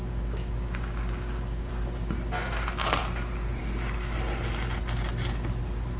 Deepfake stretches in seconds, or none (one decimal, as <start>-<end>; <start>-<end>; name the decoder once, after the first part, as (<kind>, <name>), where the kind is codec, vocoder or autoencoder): 0.0-1.7 (codec, DAC)